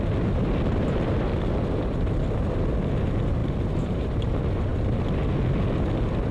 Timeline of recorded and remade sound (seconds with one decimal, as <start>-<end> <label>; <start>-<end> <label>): 0.0-3.4 recorded; 3.4-4.3 remade; 4.3-6.3 recorded